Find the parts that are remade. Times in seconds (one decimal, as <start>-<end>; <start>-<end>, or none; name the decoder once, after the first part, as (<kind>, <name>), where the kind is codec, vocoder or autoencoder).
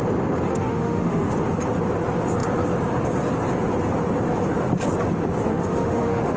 0.5-1.3 (autoencoder, DAC-VAE); 5.5-6.4